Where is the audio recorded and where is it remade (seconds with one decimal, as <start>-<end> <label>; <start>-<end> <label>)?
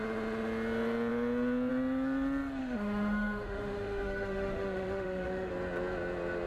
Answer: 0.0-2.6 recorded; 2.6-5.5 remade; 5.5-6.5 recorded